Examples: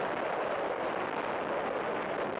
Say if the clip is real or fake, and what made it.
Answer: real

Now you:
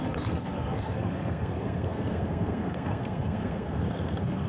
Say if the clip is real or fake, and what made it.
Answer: fake, codec, SNAC